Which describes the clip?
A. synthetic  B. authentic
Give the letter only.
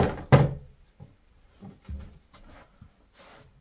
B